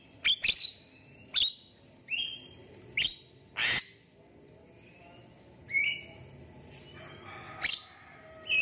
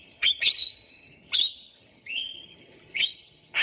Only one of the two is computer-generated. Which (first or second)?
second